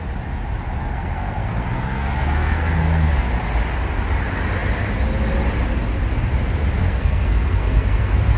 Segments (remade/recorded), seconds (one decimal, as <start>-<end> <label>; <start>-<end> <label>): 0.0-0.8 recorded; 0.8-3.3 remade; 3.3-6.8 recorded; 6.8-8.4 remade